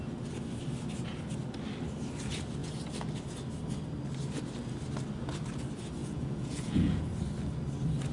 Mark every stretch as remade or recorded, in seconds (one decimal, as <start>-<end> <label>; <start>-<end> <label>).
0.0-6.0 recorded; 6.0-7.1 remade; 7.1-8.1 recorded